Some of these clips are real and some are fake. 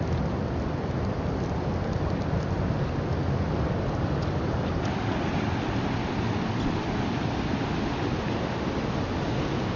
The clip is real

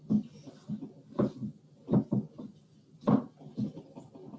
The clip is real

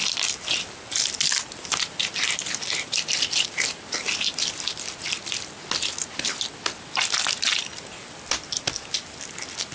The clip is real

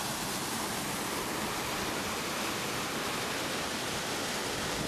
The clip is real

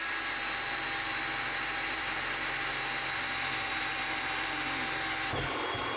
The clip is real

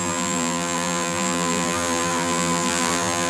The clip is fake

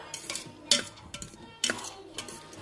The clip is real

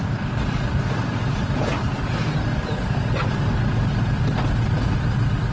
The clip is real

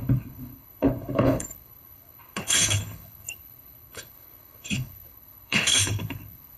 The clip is fake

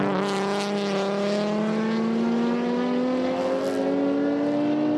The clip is real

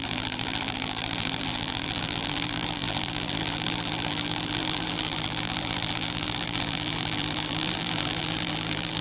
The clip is fake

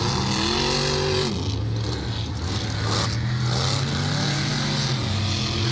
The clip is real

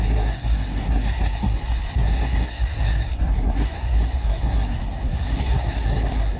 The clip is fake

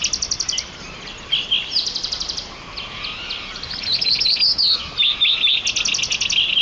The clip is real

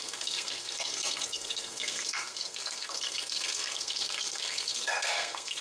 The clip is fake